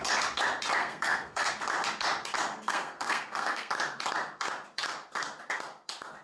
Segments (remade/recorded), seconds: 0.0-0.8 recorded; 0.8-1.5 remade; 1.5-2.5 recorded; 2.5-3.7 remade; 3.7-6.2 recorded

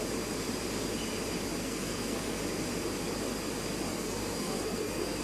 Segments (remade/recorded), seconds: 0.0-1.6 recorded; 1.6-2.4 remade; 2.4-3.9 recorded; 3.9-5.2 remade

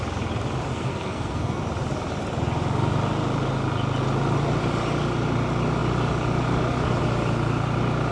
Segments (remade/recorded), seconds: 0.0-0.7 recorded; 0.7-1.6 remade; 1.6-8.1 recorded

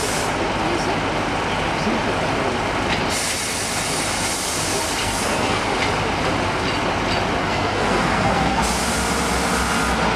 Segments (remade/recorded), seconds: 0.0-5.0 recorded; 5.0-5.6 remade; 5.6-7.4 recorded; 7.4-8.6 remade; 8.6-10.2 recorded

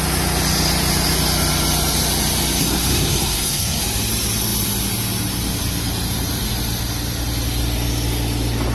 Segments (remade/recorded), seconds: 0.0-2.6 recorded; 2.6-3.8 remade; 3.8-8.7 recorded

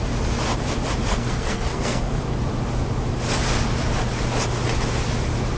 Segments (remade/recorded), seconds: 0.0-1.1 recorded; 1.1-2.2 remade; 2.2-5.6 recorded